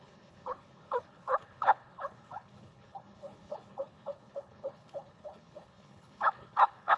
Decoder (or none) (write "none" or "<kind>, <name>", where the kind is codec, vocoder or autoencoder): codec, HILCodec